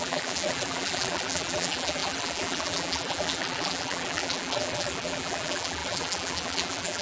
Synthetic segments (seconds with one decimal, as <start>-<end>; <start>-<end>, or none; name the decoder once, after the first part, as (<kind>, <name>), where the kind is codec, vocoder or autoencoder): 0.0-7.0 (vocoder, BigVGAN v2)